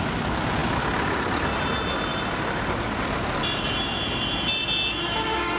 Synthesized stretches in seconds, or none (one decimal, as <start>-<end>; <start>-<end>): none